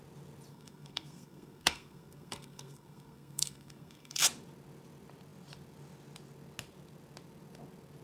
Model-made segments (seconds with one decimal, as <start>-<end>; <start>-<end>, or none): 0.5-4.2